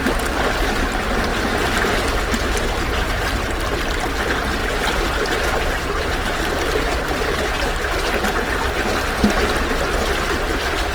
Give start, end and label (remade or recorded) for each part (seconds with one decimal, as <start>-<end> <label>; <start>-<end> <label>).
0.0-4.6 recorded; 4.6-7.7 remade; 7.7-10.9 recorded